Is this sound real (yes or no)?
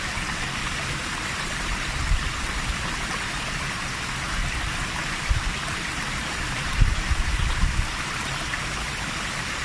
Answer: no